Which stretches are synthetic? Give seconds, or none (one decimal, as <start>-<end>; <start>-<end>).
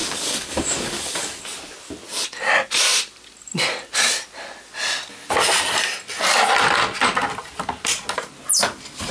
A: 0.0-1.4